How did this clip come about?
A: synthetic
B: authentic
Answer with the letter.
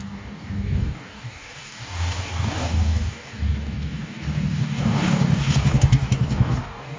A